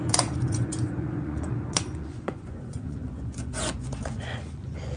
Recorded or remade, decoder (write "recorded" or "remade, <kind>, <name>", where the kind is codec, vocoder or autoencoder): remade, vocoder, Vocos